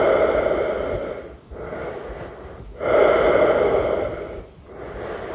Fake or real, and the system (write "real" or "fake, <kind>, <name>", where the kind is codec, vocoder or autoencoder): real